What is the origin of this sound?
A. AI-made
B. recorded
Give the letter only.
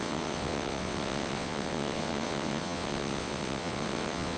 A